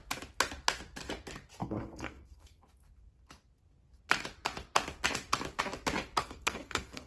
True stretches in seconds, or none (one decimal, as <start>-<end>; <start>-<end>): 0.0-1.6; 2.6-6.2

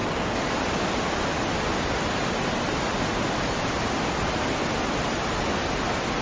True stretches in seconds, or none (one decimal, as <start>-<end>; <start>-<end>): 0.0-6.2

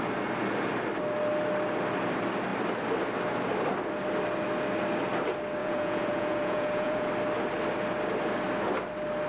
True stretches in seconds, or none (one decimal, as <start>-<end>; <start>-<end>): 0.0-5.6; 7.1-9.3

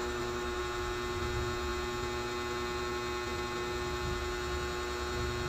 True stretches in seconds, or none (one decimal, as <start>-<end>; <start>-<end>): 0.6-5.5

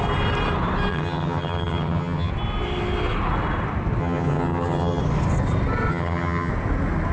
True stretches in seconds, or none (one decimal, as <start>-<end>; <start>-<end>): 0.0-0.9; 2.3-4.0; 5.0-5.9; 6.5-7.1

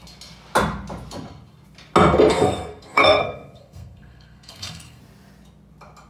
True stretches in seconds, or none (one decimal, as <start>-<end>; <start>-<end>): 0.0-2.3; 5.0-6.1

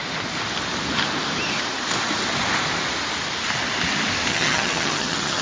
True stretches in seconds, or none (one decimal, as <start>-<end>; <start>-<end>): 0.0-4.3